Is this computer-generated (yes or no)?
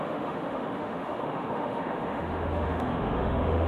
yes